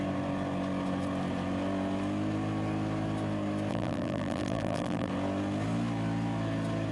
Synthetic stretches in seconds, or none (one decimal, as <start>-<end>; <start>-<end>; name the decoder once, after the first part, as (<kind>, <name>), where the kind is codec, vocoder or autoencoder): 3.7-5.1 (vocoder, BigVGAN v2)